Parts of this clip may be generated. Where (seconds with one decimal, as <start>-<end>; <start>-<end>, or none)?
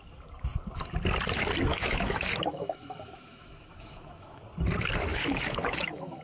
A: 1.7-4.4; 5.1-6.2